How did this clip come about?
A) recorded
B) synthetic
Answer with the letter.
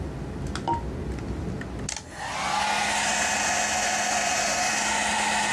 A